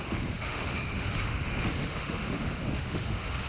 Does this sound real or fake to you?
fake